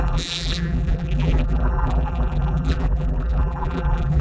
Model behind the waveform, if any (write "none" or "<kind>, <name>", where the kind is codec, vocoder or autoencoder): vocoder, BigVGAN v2